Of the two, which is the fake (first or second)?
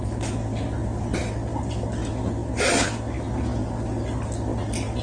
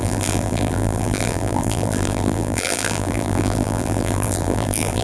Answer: second